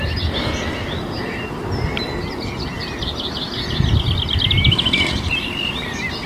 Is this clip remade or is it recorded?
recorded